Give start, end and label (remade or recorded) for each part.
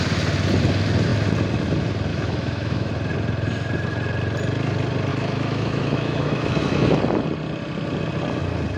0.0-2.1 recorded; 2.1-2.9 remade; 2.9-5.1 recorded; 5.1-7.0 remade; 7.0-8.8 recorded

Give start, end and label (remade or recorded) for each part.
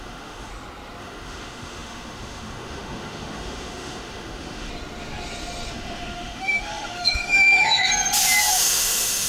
0.0-0.5 remade; 0.5-1.0 recorded; 1.0-4.7 remade; 4.7-5.7 recorded; 5.7-7.9 remade; 7.9-8.4 recorded; 8.4-9.3 remade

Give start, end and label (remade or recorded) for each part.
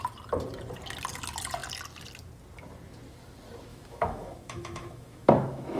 0.0-3.7 recorded; 3.7-5.8 remade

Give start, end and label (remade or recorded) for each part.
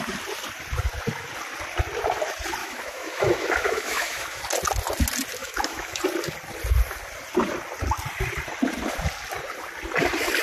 0.0-2.6 recorded; 2.6-4.4 remade; 4.4-5.4 recorded; 5.4-6.0 remade; 6.0-10.4 recorded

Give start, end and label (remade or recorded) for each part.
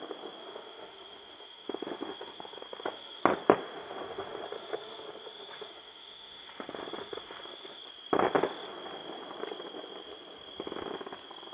0.0-0.4 recorded; 0.4-3.2 remade; 3.2-3.8 recorded; 3.8-7.8 remade; 7.8-11.5 recorded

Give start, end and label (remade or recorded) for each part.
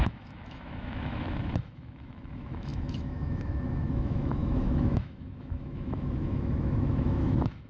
0.0-7.7 remade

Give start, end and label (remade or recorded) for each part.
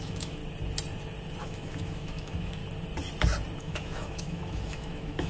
0.0-0.4 remade; 0.4-1.4 recorded; 1.4-2.6 remade; 2.6-3.6 recorded; 3.6-5.3 remade